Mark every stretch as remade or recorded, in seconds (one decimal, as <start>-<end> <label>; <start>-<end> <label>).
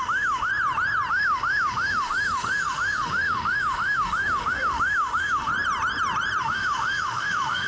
0.0-0.5 remade; 0.5-1.1 recorded; 1.1-5.5 remade; 5.5-6.4 recorded; 6.4-7.7 remade